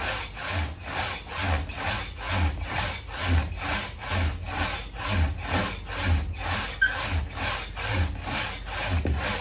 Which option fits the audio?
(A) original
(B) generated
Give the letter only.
A